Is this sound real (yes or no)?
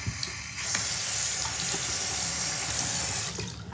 yes